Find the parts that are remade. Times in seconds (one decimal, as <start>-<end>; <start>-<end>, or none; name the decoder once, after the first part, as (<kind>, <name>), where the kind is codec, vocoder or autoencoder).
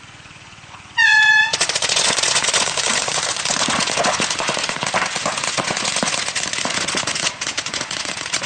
0.0-8.5 (vocoder, Vocos)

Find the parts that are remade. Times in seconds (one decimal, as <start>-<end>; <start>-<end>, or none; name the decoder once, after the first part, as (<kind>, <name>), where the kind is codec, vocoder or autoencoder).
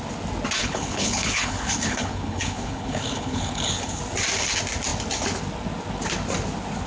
0.6-4.0 (codec, HILCodec)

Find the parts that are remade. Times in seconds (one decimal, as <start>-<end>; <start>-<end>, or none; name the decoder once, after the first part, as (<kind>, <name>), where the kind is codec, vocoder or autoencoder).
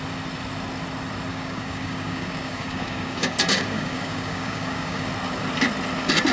1.3-5.1 (codec, DAC)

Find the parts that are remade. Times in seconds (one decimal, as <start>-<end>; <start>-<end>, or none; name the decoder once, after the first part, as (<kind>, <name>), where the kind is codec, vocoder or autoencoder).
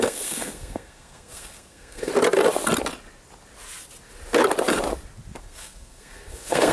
0.0-2.1 (codec, SNAC); 5.4-6.7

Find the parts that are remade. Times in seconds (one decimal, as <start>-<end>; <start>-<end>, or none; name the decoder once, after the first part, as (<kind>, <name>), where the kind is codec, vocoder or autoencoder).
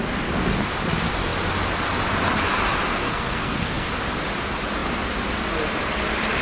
2.9-3.9 (codec, SNAC)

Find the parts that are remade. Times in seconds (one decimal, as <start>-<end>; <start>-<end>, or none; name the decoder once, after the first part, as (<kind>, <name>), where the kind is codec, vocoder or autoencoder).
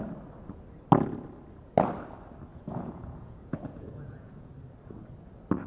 2.5-4.5 (vocoder, Vocos)